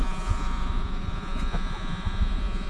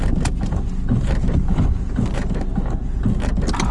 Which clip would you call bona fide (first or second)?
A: second